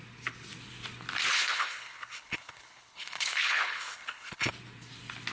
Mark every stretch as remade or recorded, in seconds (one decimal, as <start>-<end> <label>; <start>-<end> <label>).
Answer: 0.0-1.3 recorded; 1.3-4.5 remade; 4.5-5.3 recorded